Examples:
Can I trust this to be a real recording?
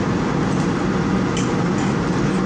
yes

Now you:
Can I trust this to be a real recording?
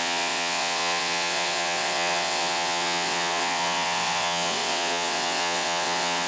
no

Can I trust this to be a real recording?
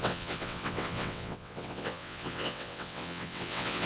no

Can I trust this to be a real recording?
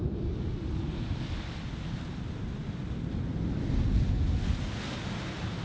yes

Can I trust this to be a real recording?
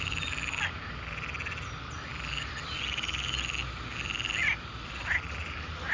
yes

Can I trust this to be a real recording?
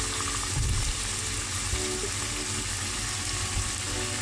yes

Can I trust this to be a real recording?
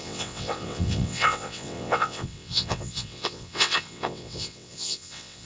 no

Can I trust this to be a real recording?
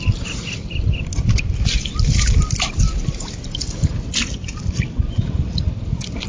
yes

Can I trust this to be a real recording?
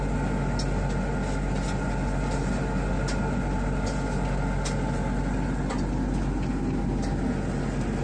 yes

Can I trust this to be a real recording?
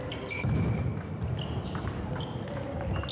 yes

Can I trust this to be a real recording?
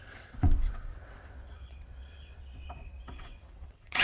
no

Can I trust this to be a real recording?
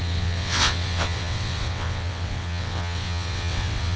no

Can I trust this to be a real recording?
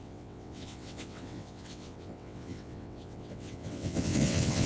no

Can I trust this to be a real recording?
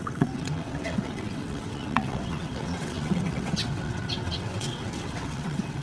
no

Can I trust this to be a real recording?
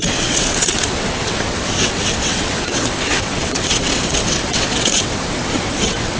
no